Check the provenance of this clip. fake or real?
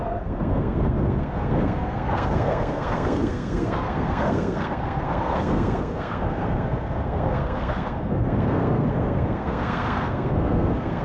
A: fake